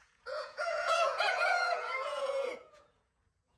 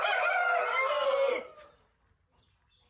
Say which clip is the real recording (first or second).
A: second